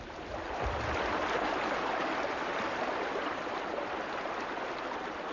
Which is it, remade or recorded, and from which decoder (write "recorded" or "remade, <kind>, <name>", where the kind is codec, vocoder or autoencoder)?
recorded